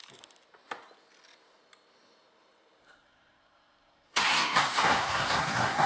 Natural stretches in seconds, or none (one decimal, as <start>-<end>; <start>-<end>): 0.0-2.8

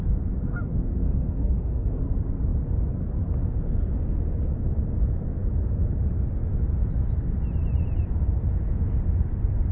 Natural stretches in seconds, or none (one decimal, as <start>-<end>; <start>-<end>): 0.0-1.0; 2.0-9.7